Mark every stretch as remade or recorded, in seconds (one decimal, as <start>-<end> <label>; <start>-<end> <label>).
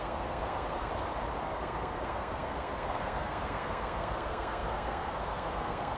0.0-0.9 remade; 0.9-1.4 recorded; 1.4-6.0 remade